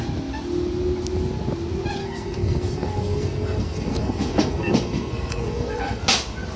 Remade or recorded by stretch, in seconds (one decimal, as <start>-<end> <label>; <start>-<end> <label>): 0.0-2.0 recorded; 2.0-6.0 remade; 6.0-6.6 recorded

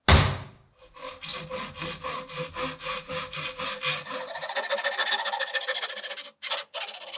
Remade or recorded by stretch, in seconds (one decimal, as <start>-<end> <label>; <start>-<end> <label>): 0.0-7.2 recorded

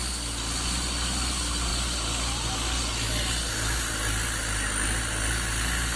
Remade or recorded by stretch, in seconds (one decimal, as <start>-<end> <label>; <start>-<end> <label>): 0.0-6.0 recorded

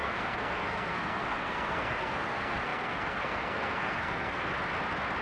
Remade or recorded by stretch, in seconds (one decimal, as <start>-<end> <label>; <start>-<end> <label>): 0.0-4.5 remade; 4.5-5.2 recorded

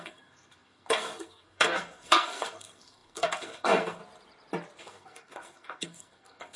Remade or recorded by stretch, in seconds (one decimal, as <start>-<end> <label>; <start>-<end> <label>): 0.0-4.0 remade; 4.0-4.8 recorded; 4.8-6.6 remade

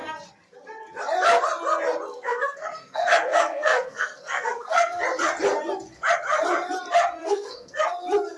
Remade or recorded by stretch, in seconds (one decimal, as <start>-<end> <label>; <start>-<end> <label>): 0.0-2.1 recorded; 2.1-5.0 remade; 5.0-7.2 recorded; 7.2-7.8 remade; 7.8-8.4 recorded

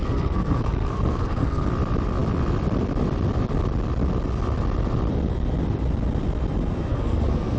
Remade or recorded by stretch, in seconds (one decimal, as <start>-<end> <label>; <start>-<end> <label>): 0.0-1.7 remade; 1.7-6.9 recorded; 6.9-7.6 remade